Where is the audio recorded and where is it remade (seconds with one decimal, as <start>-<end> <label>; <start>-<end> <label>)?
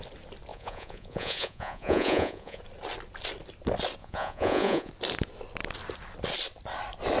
0.0-0.5 recorded; 0.5-2.6 remade; 2.6-4.0 recorded; 4.0-4.9 remade; 4.9-7.2 recorded